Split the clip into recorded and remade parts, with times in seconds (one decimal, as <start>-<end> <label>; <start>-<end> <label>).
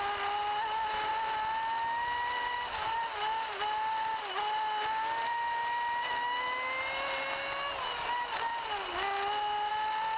0.0-10.2 recorded